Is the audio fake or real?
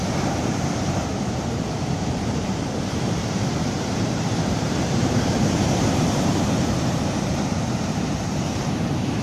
fake